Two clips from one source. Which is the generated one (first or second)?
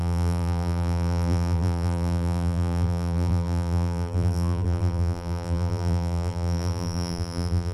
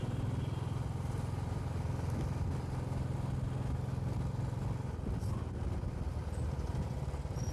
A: first